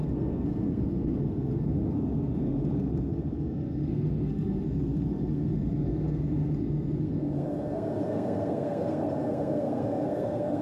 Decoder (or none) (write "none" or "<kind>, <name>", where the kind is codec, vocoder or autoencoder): codec, SNAC